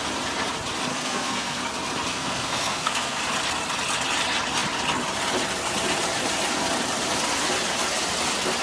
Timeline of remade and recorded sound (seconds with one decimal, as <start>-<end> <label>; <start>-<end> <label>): 0.0-0.9 recorded; 0.9-1.6 remade; 1.6-2.1 recorded; 2.1-3.2 remade; 3.2-8.6 recorded